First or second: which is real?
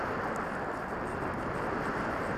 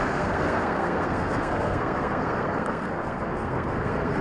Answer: first